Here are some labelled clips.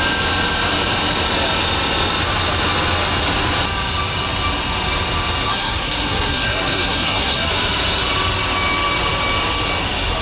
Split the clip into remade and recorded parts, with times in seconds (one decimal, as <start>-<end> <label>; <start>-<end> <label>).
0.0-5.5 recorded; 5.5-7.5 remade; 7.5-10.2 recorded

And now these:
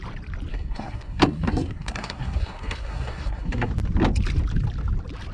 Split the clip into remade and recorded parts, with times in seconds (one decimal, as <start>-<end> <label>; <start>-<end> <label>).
0.0-0.5 recorded; 0.5-3.7 remade; 3.7-5.3 recorded

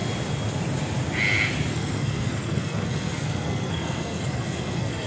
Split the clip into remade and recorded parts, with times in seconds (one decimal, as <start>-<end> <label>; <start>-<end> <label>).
0.0-1.7 recorded; 1.7-5.1 remade

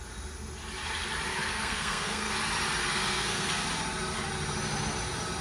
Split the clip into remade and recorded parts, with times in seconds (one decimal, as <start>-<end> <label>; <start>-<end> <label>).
0.0-1.3 recorded; 1.3-2.3 remade; 2.3-2.8 recorded; 2.8-3.5 remade; 3.5-5.4 recorded

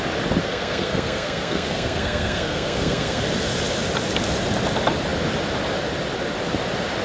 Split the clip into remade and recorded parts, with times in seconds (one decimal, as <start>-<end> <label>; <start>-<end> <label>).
0.0-0.4 recorded; 0.4-3.2 remade; 3.2-7.0 recorded